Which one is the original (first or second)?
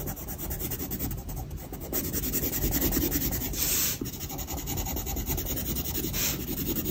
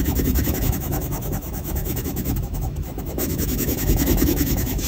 first